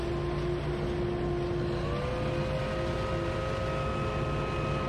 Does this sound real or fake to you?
real